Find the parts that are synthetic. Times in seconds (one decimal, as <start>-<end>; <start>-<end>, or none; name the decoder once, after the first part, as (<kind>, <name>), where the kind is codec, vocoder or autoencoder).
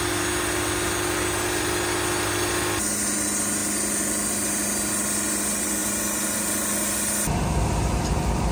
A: none